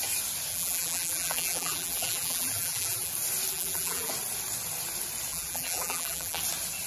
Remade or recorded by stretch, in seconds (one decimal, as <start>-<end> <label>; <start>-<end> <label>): 0.0-0.5 recorded; 0.5-3.1 remade; 3.1-3.5 recorded; 3.5-4.1 remade; 4.1-5.3 recorded; 5.3-6.4 remade; 6.4-6.9 recorded